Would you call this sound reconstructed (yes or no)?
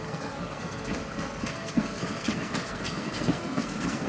yes